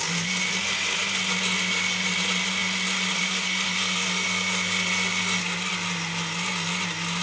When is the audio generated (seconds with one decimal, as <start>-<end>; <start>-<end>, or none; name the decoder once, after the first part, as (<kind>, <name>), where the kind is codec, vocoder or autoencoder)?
none